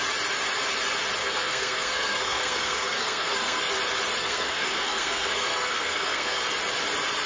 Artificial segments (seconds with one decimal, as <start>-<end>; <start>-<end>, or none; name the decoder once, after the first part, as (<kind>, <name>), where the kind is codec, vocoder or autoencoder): 1.2-3.6 (codec, SNAC); 4.2-6.4